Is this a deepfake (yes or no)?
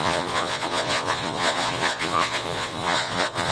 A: yes